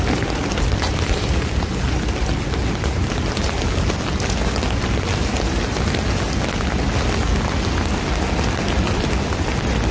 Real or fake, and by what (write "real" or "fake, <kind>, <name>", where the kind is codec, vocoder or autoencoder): real